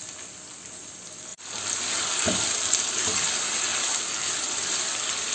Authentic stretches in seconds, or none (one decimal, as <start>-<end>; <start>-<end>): 0.0-1.3; 2.9-3.7; 4.8-5.3